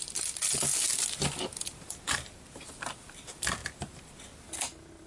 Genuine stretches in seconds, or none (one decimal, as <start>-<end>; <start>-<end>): 0.0-5.1